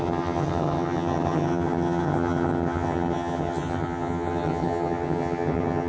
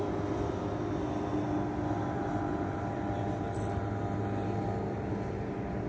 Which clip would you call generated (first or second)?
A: first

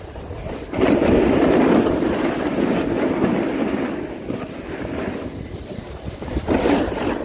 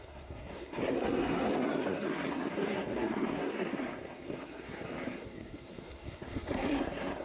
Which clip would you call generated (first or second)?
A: second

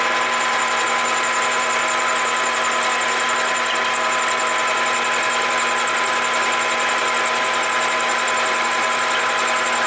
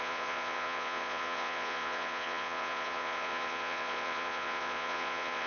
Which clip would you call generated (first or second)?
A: second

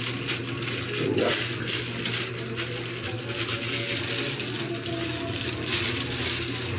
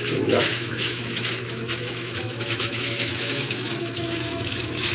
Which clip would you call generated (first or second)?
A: second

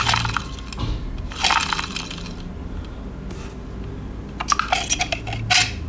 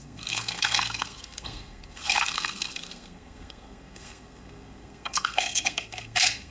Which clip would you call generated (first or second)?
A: second